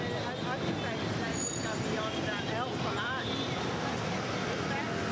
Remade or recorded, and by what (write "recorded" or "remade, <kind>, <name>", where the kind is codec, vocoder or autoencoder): recorded